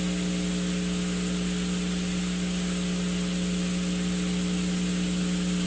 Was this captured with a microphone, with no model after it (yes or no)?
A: yes